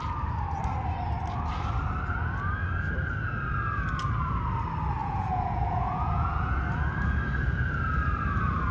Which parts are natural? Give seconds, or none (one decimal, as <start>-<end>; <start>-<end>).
0.0-5.0; 6.6-8.7